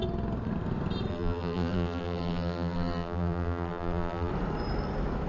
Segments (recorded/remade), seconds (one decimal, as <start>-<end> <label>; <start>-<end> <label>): 0.0-1.1 recorded; 1.1-4.3 remade; 4.3-5.3 recorded